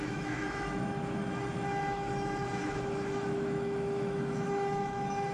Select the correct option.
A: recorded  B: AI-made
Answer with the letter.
B